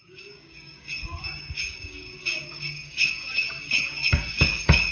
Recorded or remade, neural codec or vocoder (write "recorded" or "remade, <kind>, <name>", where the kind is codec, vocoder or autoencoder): remade, codec, DAC